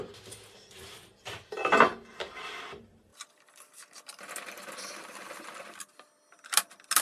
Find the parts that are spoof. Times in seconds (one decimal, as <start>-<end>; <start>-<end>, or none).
3.1-4.3